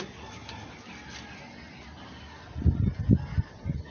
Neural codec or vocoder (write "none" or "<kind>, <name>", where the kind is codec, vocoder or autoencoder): none